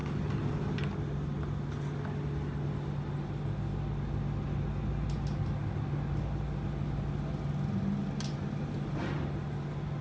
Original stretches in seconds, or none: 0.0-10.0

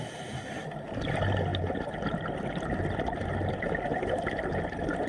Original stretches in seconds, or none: 0.0-5.1

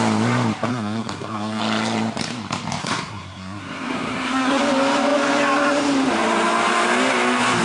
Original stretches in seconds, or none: 0.0-0.7; 1.6-2.8; 4.6-7.6

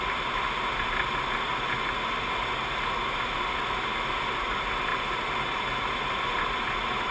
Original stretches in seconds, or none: 0.0-7.1